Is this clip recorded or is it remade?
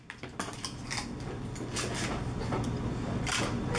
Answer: recorded